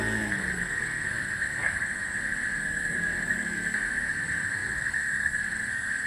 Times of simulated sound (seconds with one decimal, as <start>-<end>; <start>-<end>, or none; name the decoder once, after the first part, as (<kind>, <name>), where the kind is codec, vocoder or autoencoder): 0.0-6.1 (codec, SNAC)